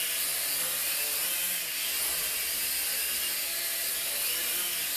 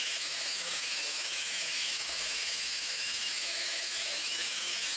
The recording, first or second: first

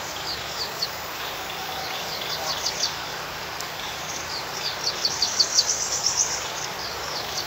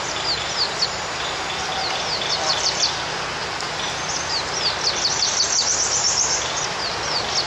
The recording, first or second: second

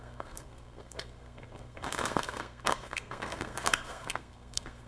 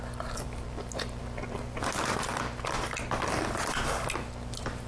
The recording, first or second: second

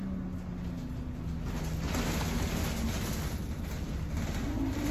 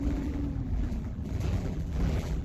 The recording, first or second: first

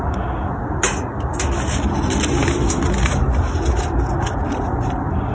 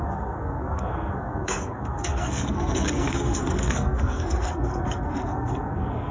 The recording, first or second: first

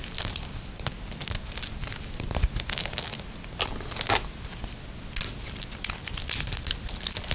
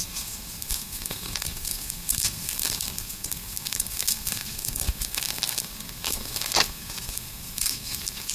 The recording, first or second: first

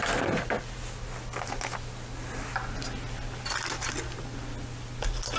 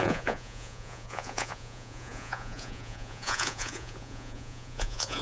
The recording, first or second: first